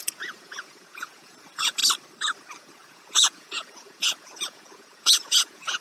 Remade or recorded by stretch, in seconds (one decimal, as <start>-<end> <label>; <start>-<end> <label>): 0.0-1.8 remade; 1.8-2.6 recorded; 2.6-5.8 remade